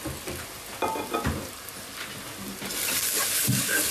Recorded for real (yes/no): yes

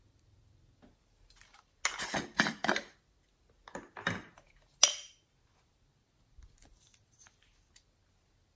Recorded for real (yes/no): yes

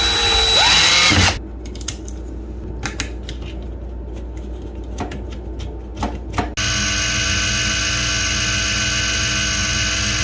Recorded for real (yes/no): yes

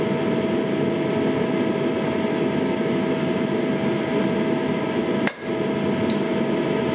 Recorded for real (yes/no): yes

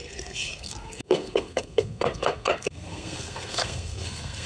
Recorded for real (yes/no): no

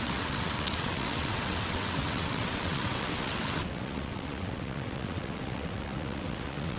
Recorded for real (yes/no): no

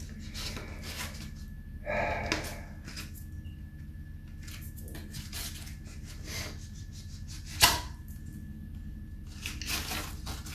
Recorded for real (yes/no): yes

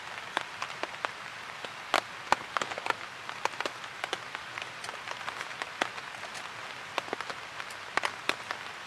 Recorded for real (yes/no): yes